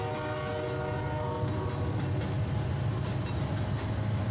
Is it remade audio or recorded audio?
recorded